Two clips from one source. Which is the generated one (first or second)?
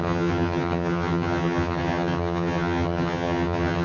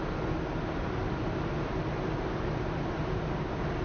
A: first